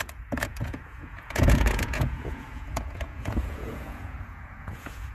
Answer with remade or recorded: remade